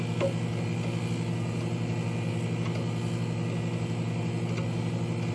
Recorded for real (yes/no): yes